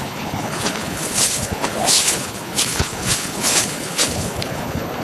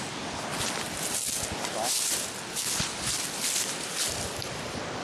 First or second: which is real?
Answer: second